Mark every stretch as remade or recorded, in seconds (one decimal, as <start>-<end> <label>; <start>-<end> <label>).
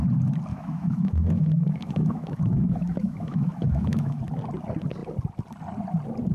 0.0-0.5 recorded; 0.5-4.2 remade; 4.2-6.3 recorded